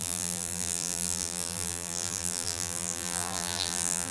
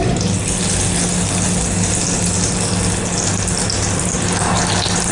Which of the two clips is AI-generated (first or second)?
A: first